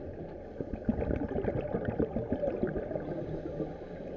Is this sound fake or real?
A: real